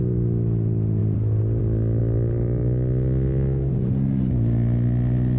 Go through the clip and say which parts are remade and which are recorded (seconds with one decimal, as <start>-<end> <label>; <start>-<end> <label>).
0.0-5.4 recorded